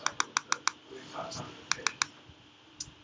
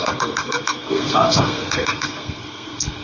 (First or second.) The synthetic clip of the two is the second